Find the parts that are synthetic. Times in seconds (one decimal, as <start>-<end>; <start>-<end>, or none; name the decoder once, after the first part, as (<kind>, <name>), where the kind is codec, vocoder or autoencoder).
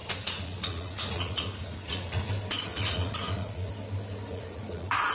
0.0-2.3 (vocoder, Vocos); 2.7-3.7; 4.3-5.1